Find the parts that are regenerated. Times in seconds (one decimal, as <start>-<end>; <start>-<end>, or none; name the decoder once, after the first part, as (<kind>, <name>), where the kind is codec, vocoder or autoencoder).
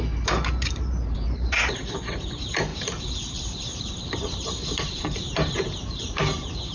0.0-6.7 (vocoder, BigVGAN v2)